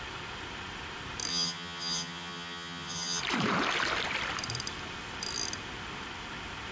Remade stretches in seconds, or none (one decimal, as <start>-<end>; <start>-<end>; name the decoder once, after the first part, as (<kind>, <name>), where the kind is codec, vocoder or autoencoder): 1.3-3.2 (vocoder, HiFi-GAN)